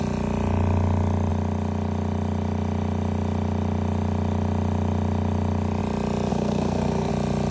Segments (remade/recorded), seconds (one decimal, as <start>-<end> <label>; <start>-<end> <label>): 0.0-6.3 recorded; 6.3-7.1 remade; 7.1-7.5 recorded